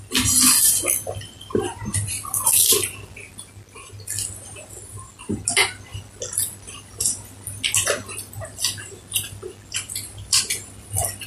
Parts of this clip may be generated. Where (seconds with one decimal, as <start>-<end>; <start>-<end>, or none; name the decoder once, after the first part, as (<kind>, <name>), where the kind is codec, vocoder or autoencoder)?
1.9-3.3 (vocoder, BigVGAN v2); 5.9-10.4